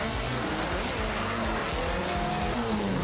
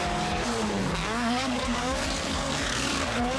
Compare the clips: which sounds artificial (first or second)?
second